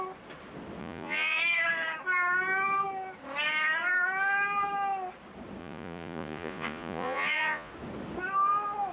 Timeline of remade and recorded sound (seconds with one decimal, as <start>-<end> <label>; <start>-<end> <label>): 0.0-0.8 recorded; 0.8-1.4 remade; 1.4-5.6 recorded; 5.6-7.7 remade; 7.7-8.9 recorded